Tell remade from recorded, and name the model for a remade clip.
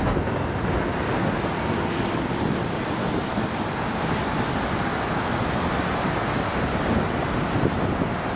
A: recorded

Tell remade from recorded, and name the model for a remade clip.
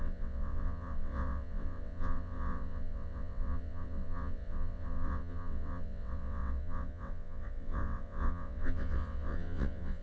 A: remade, vocoder, WaveNeXt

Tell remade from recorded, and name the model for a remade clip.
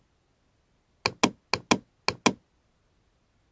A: recorded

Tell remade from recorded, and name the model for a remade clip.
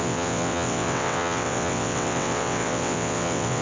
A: remade, vocoder, WaveNeXt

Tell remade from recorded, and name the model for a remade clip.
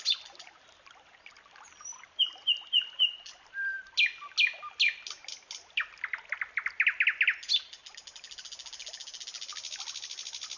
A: recorded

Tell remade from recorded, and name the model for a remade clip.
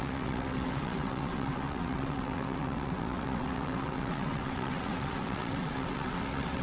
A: remade, vocoder, WaveNeXt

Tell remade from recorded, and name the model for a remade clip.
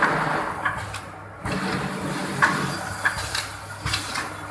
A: recorded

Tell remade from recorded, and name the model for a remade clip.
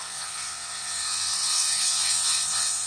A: remade, vocoder, WaveNeXt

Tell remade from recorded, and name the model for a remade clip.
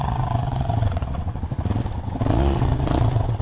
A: remade, vocoder, WaveNeXt